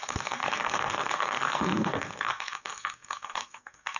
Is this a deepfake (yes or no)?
yes